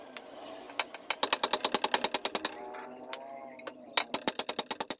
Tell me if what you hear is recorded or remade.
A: recorded